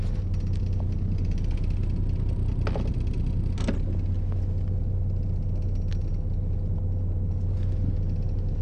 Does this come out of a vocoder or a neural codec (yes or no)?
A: no